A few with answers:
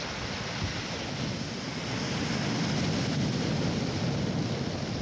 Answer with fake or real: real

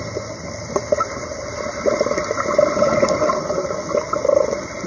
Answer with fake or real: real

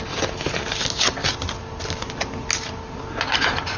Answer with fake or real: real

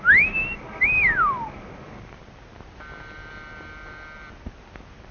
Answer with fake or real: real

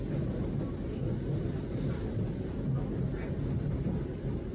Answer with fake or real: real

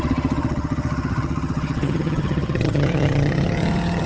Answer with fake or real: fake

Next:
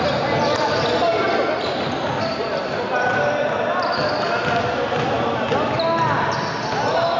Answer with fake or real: real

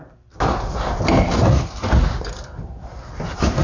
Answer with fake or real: real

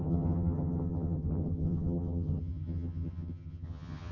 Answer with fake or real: fake